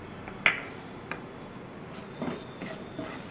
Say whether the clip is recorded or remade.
recorded